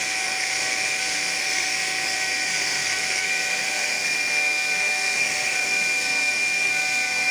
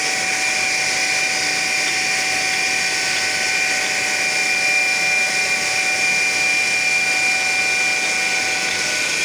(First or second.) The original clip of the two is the second